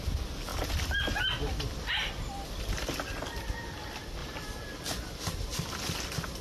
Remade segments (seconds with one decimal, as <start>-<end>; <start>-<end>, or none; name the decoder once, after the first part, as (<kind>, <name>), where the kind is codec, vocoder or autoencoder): 4.2-4.8 (vocoder, BigVGAN v2)

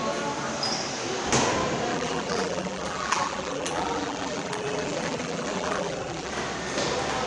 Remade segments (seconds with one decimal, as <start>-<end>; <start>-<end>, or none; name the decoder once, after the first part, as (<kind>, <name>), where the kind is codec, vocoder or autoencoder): 1.9-6.3 (vocoder, BigVGAN v2)

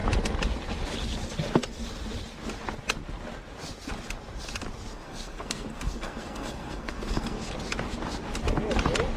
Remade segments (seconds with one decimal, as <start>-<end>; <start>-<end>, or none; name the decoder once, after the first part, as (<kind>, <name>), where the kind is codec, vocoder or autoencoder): 4.9-7.5 (codec, SNAC)

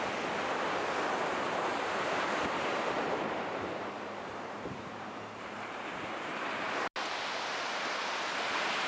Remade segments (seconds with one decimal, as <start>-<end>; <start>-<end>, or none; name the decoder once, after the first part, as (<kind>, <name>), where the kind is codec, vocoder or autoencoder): 1.7-6.9 (vocoder, BigVGAN v2)

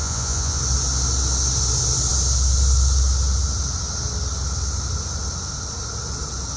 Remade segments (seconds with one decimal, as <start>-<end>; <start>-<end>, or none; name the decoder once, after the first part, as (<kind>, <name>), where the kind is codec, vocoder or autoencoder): 0.0-0.6 (vocoder, Vocos)

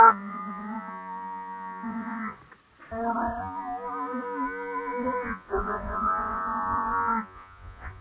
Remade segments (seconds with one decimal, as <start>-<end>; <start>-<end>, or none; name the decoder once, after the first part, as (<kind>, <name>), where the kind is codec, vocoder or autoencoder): 0.0-2.4 (vocoder, Vocos); 3.4-8.0

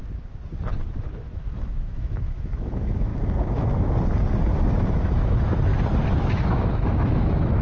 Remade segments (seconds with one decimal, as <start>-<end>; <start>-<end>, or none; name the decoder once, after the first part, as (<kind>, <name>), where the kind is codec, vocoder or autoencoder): 0.8-3.1 (autoencoder, DAC-VAE); 4.4-5.7; 6.2-7.6